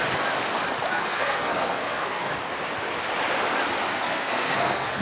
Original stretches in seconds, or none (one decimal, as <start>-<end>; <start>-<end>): 0.0-0.9; 2.3-3.9